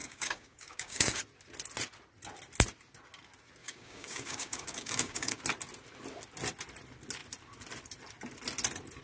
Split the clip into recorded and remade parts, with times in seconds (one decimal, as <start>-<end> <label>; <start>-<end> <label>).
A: 0.0-1.2 remade; 1.2-3.6 recorded; 3.6-5.4 remade; 5.4-9.0 recorded